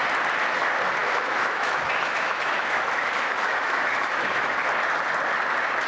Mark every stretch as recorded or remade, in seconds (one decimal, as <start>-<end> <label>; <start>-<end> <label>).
0.0-1.0 recorded; 1.0-4.5 remade; 4.5-5.9 recorded